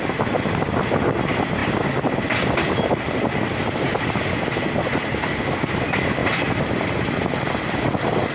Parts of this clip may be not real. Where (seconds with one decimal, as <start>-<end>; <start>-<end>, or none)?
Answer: none